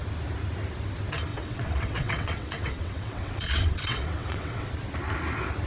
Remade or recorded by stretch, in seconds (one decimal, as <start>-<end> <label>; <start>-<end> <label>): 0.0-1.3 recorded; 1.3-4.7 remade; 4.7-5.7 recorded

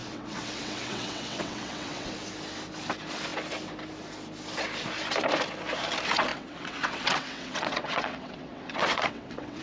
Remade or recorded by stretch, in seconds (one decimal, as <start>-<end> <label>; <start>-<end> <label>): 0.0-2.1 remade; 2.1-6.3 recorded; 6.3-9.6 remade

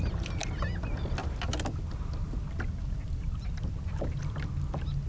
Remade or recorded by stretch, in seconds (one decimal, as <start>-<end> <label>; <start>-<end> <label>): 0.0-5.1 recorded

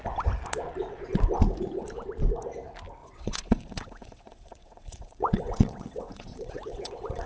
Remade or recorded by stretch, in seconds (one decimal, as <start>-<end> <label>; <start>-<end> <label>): 0.0-3.0 recorded; 3.0-7.3 remade

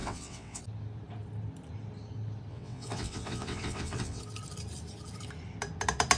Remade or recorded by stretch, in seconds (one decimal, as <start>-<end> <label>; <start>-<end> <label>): 0.0-0.6 remade; 0.6-2.5 recorded; 2.5-4.2 remade; 4.2-6.2 recorded

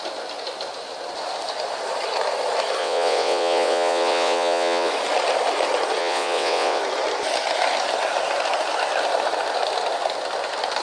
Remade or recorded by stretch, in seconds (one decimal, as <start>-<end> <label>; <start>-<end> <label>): 0.0-2.8 recorded; 2.8-4.9 remade; 4.9-6.0 recorded; 6.0-6.8 remade; 6.8-10.8 recorded

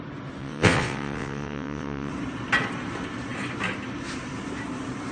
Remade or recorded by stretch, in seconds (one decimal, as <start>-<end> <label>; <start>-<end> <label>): 0.0-0.4 recorded; 0.4-2.1 remade; 2.1-5.1 recorded